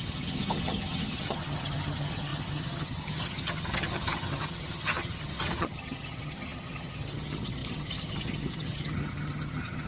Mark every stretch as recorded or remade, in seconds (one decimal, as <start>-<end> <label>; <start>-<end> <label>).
0.0-9.9 remade